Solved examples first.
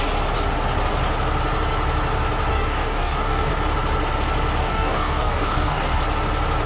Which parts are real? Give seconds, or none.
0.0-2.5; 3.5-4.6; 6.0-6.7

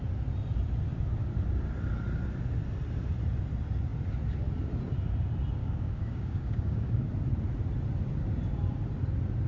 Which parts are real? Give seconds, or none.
0.0-5.6; 7.1-9.5

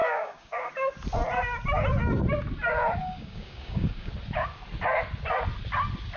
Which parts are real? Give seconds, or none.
0.7-3.0; 4.1-6.2